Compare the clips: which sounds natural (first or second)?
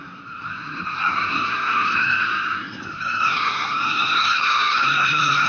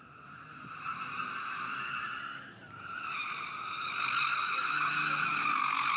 second